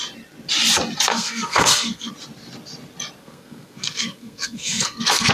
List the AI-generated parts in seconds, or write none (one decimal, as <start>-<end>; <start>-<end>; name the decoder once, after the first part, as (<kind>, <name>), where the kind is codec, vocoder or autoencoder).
1.1-2.1 (codec, SNAC); 3.2-5.3